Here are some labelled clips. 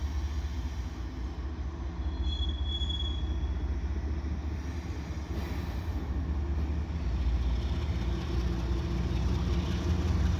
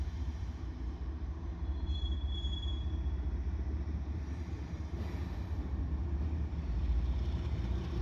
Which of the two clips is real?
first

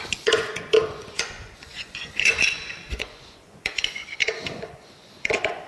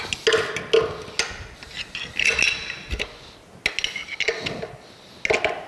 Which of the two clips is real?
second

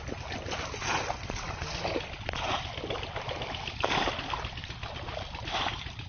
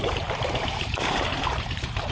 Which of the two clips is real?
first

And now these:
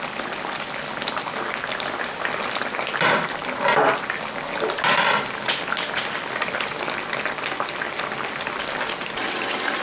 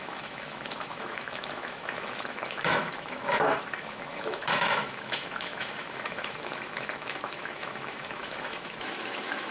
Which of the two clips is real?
first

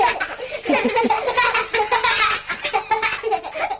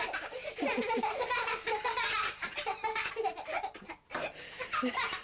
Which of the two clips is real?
first